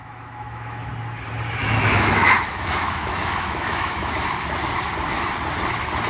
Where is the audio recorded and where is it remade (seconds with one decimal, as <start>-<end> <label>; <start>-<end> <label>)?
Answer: 0.0-0.9 remade; 0.9-1.6 recorded; 1.6-4.1 remade; 4.1-6.1 recorded